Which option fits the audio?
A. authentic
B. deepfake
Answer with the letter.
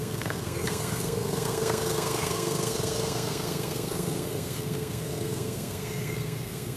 B